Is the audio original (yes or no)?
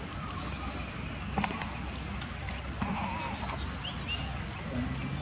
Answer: yes